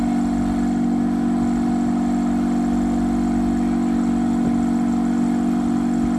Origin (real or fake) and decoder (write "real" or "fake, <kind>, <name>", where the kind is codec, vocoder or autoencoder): real